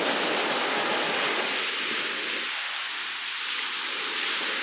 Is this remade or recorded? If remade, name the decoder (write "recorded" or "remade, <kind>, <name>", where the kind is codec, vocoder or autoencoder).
recorded